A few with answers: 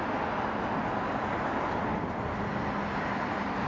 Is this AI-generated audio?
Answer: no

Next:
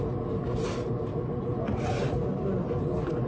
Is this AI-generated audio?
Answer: no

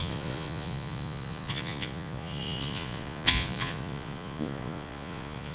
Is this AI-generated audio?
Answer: yes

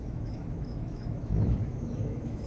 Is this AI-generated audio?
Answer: yes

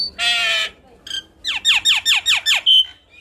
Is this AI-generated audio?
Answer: no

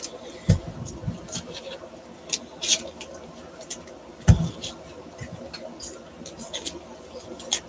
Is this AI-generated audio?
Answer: no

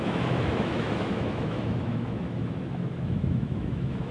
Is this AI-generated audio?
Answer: yes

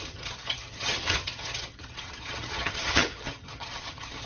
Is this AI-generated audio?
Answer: yes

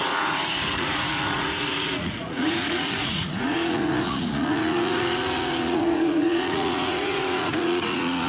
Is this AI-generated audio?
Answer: yes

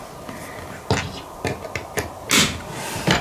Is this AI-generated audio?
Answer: no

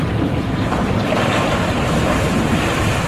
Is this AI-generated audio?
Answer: yes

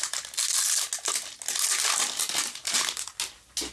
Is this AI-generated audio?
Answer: no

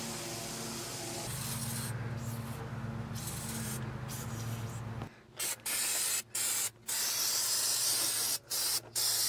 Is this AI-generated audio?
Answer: no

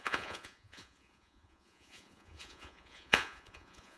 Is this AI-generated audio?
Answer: yes